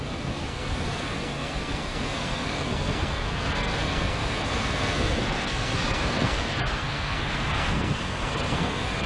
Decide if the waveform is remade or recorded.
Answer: remade